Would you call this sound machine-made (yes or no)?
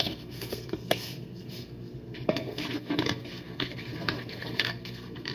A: yes